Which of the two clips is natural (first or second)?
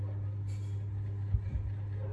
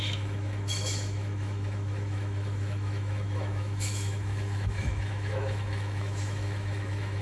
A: first